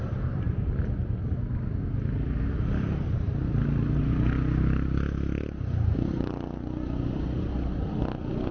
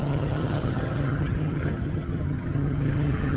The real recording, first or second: first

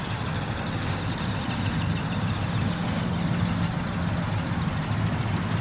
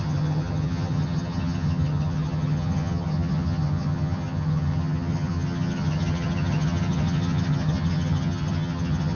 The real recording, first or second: first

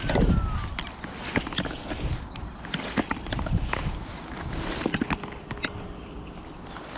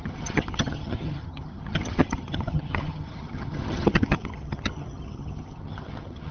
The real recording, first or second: first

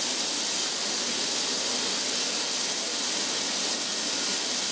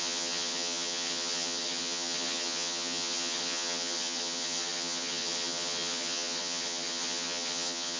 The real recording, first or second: first